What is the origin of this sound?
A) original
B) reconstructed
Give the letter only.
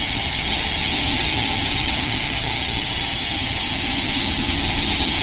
B